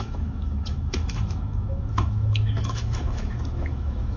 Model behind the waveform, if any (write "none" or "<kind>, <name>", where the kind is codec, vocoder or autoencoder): autoencoder, DAC-VAE